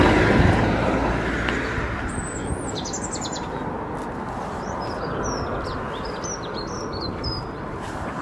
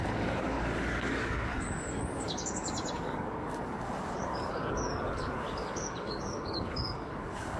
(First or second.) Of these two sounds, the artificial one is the second